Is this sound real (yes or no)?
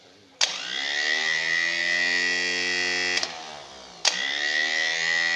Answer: yes